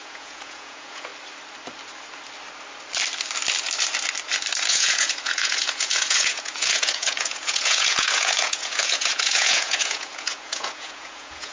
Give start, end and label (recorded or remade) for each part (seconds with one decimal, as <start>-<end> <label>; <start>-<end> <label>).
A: 0.0-1.1 remade; 1.1-4.7 recorded; 4.7-11.5 remade